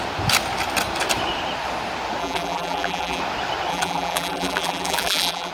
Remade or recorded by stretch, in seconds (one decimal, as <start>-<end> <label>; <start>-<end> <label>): 0.0-2.2 recorded; 2.2-3.2 remade; 3.2-3.7 recorded; 3.7-5.5 remade